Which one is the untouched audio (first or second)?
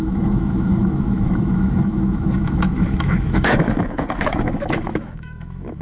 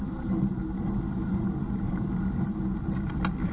second